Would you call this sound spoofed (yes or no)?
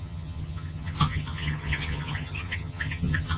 yes